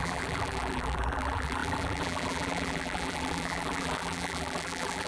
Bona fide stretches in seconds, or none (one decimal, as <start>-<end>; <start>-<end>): none